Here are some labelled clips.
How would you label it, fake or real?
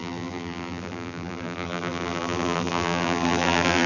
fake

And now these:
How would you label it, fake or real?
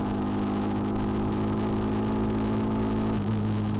real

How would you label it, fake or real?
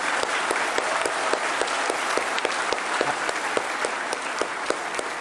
real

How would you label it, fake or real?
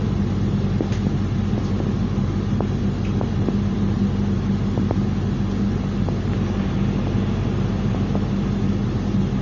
real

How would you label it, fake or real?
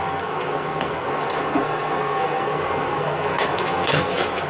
fake